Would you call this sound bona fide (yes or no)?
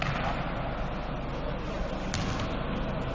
yes